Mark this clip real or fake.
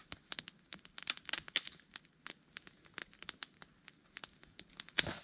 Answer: real